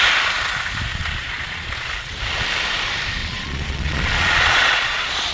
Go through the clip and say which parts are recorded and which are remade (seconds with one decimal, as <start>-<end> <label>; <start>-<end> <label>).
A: 0.0-0.9 recorded; 0.9-1.9 remade; 1.9-3.2 recorded; 3.2-5.3 remade